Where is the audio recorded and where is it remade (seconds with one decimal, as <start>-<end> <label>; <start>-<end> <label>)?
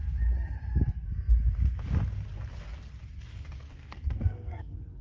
0.0-3.7 recorded; 3.7-5.0 remade